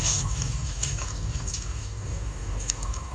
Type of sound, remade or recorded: remade